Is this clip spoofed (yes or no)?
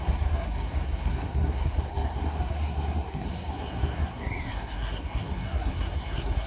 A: yes